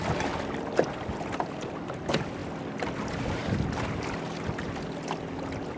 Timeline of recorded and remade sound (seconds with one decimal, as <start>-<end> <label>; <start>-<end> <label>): 0.0-5.8 recorded